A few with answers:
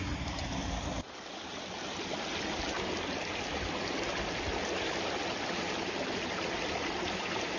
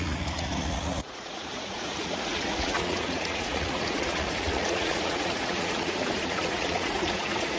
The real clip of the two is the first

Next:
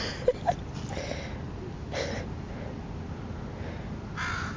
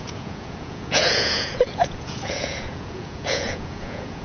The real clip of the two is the first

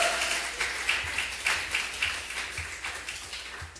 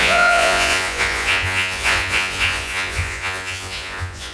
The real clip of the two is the first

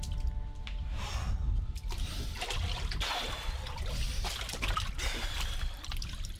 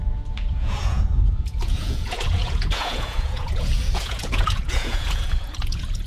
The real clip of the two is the first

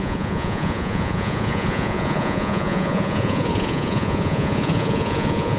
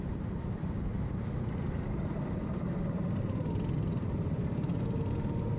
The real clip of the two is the second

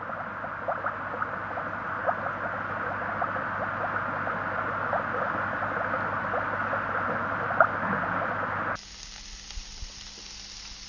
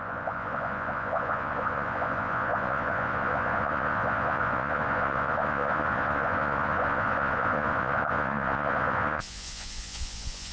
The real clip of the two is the first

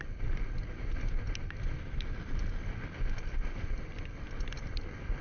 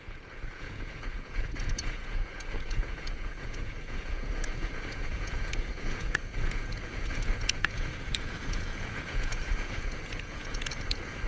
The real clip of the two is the first